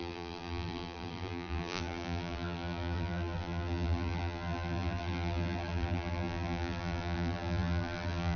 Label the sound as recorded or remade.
remade